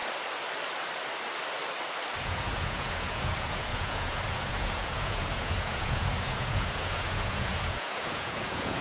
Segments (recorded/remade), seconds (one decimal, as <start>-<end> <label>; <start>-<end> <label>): 0.0-2.2 recorded; 2.2-8.8 remade